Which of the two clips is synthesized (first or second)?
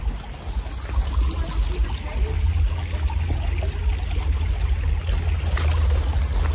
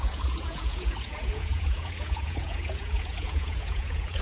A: second